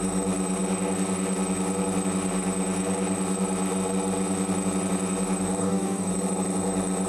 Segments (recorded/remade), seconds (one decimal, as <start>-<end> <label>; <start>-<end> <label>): 0.0-5.6 recorded; 5.6-6.1 remade; 6.1-7.1 recorded